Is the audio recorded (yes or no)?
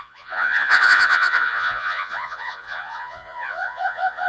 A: no